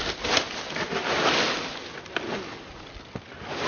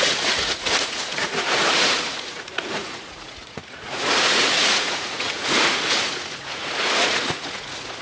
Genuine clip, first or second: first